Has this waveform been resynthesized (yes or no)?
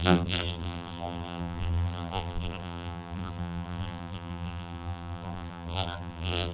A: yes